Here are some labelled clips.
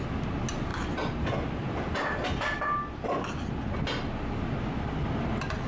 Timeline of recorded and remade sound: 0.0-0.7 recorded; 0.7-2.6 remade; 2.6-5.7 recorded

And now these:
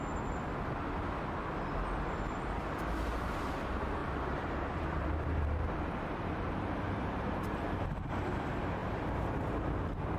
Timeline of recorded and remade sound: 0.0-4.0 recorded; 4.0-8.1 remade; 8.1-8.8 recorded; 8.8-9.4 remade; 9.4-10.2 recorded

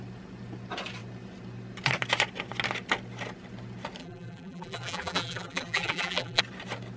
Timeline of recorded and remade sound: 0.0-4.0 recorded; 4.0-6.4 remade; 6.4-7.0 recorded

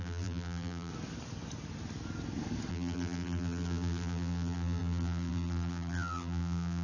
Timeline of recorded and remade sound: 0.0-0.9 remade; 0.9-2.7 recorded; 2.7-6.8 remade

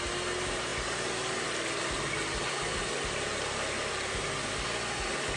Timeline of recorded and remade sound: 0.0-5.4 recorded

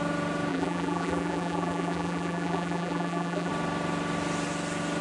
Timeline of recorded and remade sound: 0.0-0.5 recorded; 0.5-3.5 remade; 3.5-5.0 recorded